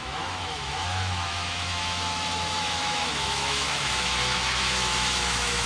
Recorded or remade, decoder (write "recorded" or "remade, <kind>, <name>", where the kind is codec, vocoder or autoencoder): remade, autoencoder, DAC-VAE